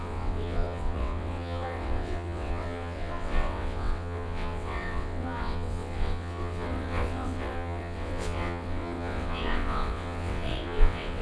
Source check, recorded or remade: remade